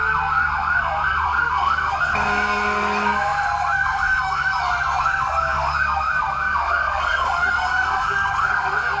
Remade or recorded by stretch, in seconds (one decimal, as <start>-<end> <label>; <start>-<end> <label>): 0.0-9.0 remade